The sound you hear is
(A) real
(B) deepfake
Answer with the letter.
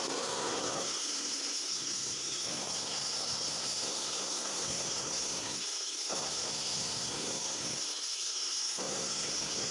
B